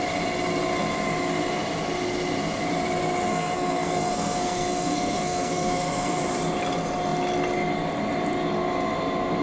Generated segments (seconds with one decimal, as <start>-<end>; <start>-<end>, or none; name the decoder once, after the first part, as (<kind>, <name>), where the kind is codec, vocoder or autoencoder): 3.3-6.2 (codec, SNAC)